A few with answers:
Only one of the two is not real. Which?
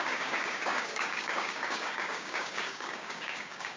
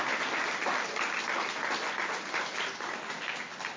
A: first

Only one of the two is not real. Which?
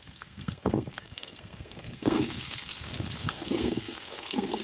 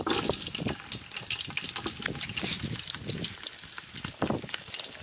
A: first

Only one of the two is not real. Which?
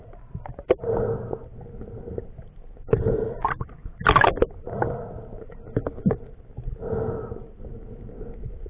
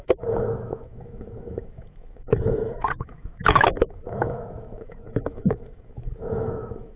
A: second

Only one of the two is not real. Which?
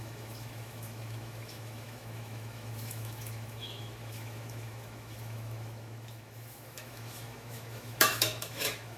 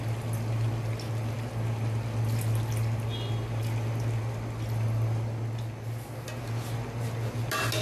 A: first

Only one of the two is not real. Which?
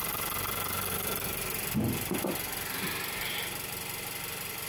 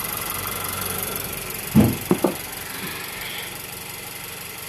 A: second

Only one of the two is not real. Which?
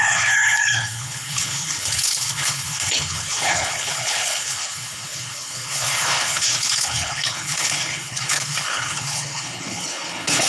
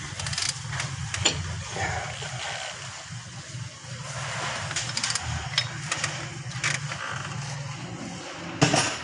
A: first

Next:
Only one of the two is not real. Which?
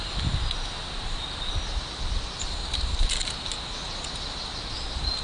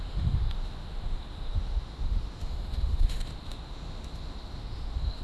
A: second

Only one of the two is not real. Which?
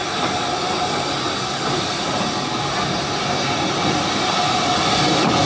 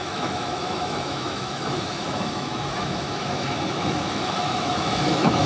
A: second